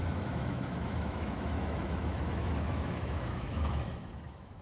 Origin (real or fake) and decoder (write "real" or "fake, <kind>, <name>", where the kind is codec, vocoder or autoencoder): fake, autoencoder, DAC-VAE